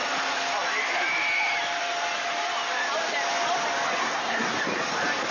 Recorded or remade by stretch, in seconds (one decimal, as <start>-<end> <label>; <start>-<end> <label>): 0.0-4.0 recorded; 4.0-4.6 remade; 4.6-5.3 recorded